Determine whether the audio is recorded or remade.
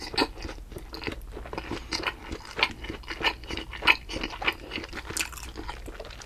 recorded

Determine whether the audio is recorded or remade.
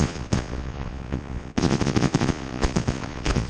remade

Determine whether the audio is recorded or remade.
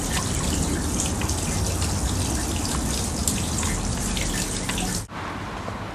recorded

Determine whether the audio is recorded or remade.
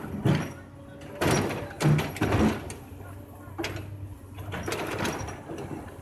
recorded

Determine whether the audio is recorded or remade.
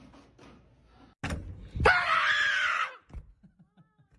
recorded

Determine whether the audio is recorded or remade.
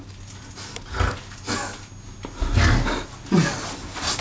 recorded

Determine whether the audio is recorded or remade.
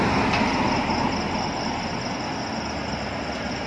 recorded